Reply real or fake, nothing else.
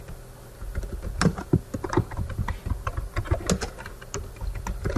real